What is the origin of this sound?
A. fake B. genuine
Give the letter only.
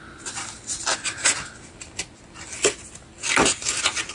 B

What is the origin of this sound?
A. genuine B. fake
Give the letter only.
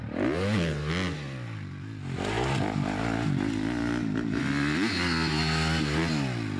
A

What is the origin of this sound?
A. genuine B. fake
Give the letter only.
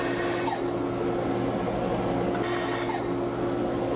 A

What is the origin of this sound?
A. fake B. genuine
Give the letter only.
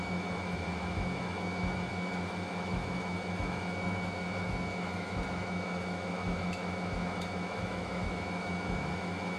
A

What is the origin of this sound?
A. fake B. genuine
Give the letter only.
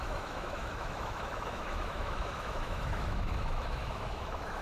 A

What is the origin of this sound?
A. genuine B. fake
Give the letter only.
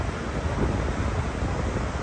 A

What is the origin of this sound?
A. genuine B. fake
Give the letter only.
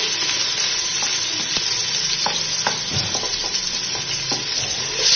A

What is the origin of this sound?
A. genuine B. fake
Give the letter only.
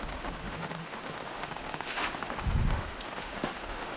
B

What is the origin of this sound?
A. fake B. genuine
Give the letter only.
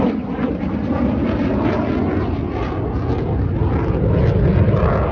B